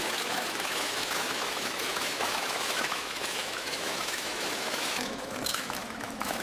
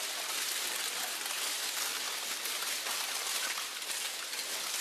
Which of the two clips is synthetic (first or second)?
first